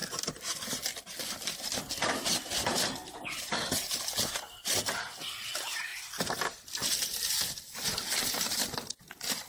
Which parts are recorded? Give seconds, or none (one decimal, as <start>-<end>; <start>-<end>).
none